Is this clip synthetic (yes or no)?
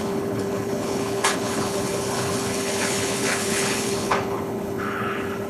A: yes